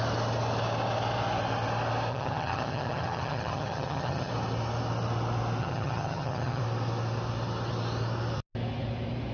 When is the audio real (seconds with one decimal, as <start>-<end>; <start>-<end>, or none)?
0.0-2.1; 4.3-5.6; 6.6-9.3